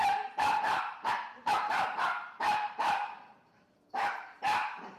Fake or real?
fake